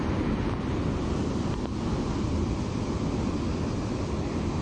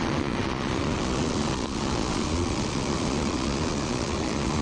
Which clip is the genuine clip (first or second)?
first